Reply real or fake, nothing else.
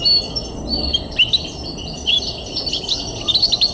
real